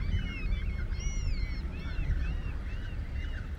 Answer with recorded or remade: recorded